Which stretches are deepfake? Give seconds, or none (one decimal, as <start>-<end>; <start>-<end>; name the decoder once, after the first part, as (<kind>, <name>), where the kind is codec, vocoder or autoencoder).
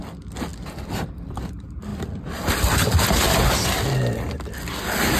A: none